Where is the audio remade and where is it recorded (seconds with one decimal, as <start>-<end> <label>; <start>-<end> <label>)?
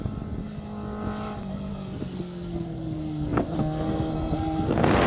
0.0-1.7 recorded; 1.7-5.1 remade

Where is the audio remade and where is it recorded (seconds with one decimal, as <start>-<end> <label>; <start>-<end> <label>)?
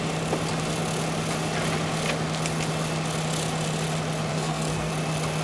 0.0-4.3 recorded; 4.3-4.9 remade; 4.9-5.4 recorded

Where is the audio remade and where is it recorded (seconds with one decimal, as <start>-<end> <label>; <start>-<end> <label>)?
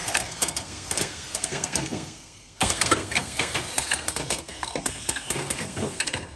0.0-6.4 remade